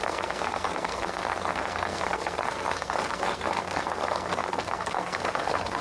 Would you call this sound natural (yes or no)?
no